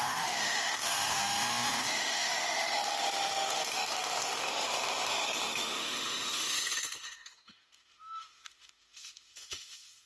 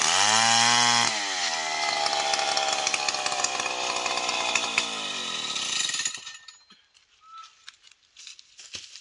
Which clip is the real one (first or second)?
second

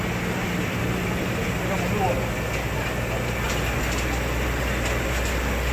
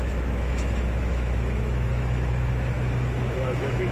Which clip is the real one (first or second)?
first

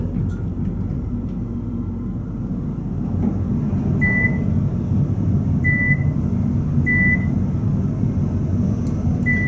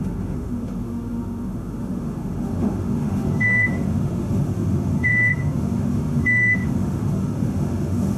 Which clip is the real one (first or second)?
first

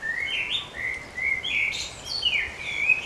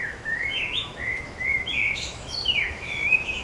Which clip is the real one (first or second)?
first